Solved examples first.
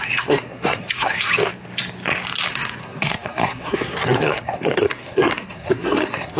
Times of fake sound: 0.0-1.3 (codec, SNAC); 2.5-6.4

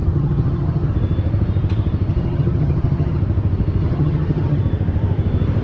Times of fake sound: 0.0-0.9 (vocoder, HiFi-GAN); 2.1-3.2; 3.8-4.6